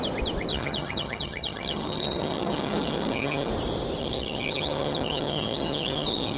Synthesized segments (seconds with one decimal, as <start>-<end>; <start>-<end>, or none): 0.5-3.5; 4.0-6.4

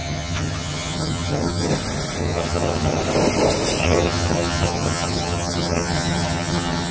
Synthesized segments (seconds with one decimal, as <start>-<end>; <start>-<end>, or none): 0.0-1.7; 2.2-3.0; 3.8-6.9

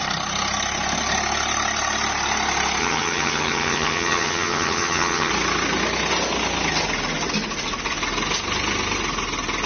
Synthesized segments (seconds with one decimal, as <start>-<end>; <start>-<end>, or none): 2.8-5.3

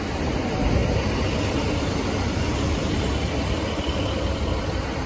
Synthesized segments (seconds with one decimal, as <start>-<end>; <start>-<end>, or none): none

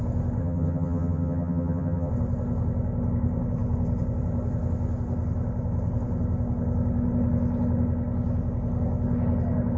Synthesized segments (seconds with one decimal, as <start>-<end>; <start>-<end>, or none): 0.4-2.1

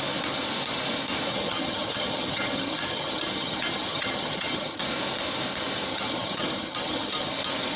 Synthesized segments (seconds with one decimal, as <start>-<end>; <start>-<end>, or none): 1.3-4.8; 5.9-7.3

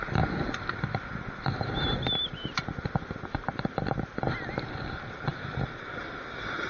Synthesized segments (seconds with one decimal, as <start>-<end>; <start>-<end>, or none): none